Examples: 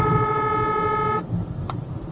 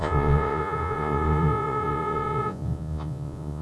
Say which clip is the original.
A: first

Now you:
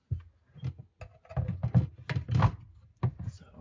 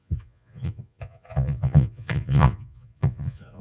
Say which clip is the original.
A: first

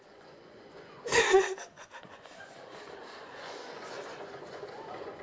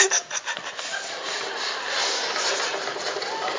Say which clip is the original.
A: second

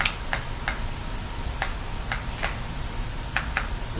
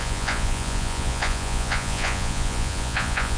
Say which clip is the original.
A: first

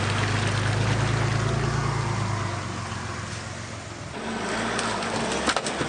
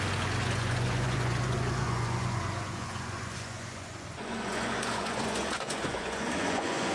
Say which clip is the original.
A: first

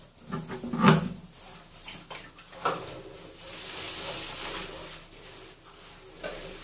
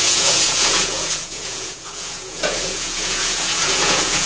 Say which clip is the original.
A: first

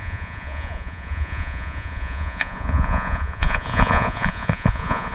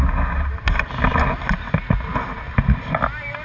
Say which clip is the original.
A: second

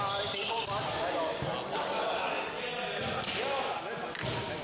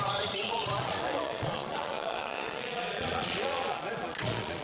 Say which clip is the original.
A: first